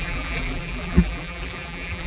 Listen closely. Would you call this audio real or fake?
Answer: fake